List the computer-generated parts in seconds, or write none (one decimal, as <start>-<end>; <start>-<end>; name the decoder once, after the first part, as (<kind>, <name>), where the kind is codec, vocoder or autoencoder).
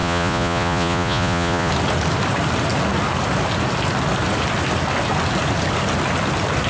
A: 0.0-1.7 (vocoder, Vocos)